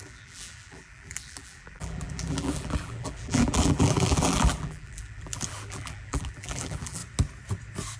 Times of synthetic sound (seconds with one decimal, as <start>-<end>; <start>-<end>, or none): 0.0-7.0